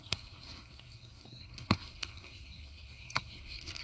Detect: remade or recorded remade